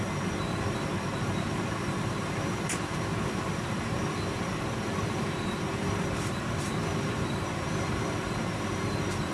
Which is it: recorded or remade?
remade